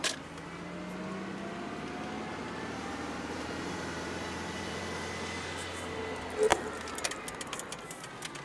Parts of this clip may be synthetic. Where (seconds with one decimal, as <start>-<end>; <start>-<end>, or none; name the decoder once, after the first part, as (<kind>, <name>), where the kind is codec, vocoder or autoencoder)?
2.4-4.8 (vocoder, BigVGAN v2)